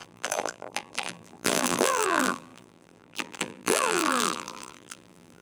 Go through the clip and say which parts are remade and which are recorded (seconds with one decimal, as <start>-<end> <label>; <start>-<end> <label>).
0.0-5.4 remade